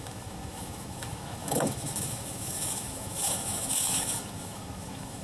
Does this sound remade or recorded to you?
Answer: remade